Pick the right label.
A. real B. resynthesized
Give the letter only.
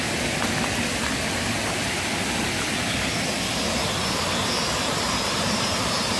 A